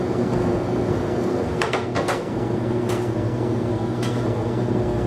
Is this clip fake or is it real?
fake